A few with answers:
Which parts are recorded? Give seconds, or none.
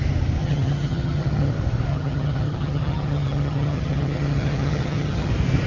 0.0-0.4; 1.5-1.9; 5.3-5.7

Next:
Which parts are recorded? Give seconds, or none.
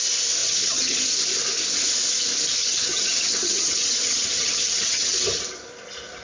0.0-0.4; 1.0-2.6; 5.1-6.2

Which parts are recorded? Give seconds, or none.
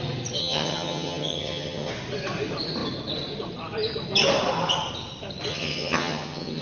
0.0-0.4; 1.9-5.5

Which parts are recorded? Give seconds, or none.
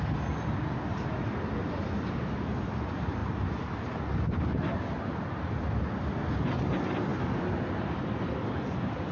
0.0-9.1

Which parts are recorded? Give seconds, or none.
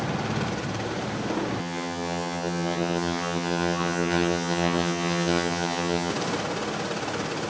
0.0-1.6; 6.1-7.5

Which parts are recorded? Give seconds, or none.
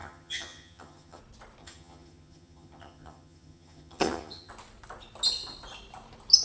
1.2-1.6; 4.5-6.4